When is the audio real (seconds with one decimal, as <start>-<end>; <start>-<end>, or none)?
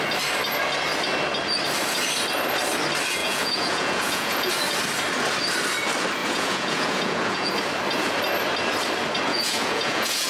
0.0-3.2; 4.5-6.2; 7.5-9.3